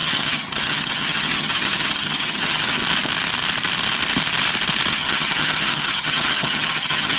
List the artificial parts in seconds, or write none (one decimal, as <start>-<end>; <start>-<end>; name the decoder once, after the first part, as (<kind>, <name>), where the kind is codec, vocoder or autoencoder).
0.0-2.8 (vocoder, HiFi-GAN); 4.9-7.2